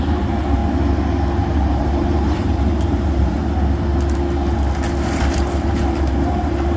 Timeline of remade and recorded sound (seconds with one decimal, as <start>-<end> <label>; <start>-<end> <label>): 0.0-0.6 remade; 0.6-1.7 recorded; 1.7-3.4 remade; 3.4-5.3 recorded; 5.3-6.8 remade